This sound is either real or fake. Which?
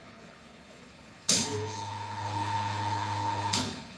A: fake